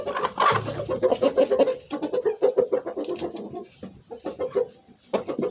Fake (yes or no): no